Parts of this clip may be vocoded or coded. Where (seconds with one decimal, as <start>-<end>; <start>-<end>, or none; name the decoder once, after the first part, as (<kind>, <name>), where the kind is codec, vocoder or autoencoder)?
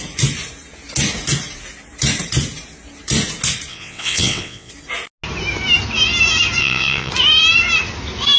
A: 3.7-4.7 (vocoder, WaveNeXt); 6.6-7.1